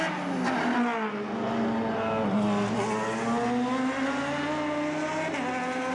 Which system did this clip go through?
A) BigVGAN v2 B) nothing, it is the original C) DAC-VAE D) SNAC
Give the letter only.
B